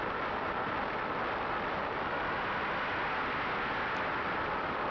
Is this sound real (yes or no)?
yes